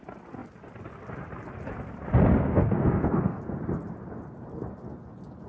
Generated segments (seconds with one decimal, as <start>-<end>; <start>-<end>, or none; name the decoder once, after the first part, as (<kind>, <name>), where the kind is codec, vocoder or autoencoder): 2.5-3.4 (codec, SNAC)